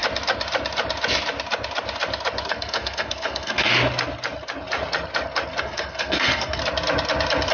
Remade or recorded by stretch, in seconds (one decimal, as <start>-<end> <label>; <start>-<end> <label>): 0.0-2.5 recorded; 2.5-3.7 remade; 3.7-5.6 recorded; 5.6-6.6 remade; 6.6-7.5 recorded